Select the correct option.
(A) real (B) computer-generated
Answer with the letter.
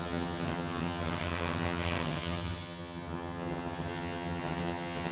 B